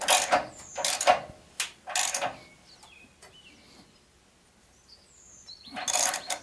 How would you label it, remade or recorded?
recorded